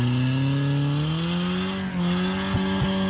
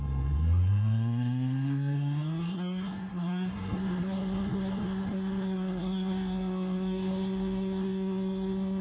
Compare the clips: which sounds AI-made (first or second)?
second